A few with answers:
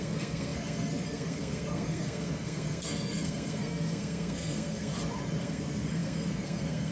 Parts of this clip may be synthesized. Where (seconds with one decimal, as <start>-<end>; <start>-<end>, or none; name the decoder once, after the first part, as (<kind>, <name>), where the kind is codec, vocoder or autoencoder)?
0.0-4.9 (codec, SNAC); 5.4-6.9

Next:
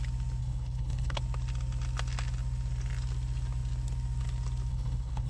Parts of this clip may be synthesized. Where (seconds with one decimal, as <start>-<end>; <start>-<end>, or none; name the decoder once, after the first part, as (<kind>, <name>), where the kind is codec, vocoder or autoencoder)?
0.4-1.2 (codec, HILCodec); 4.7-5.3

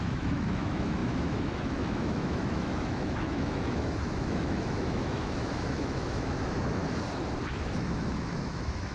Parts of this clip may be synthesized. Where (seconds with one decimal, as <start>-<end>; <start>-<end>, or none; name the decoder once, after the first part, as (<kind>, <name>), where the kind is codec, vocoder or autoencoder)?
0.0-6.8 (autoencoder, DAC-VAE); 7.5-8.9